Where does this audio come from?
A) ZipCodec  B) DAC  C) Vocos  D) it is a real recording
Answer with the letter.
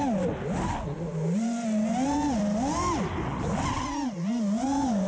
D